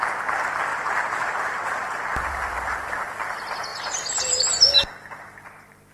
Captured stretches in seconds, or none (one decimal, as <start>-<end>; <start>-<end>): 0.0-0.7; 1.8-3.7; 4.2-5.9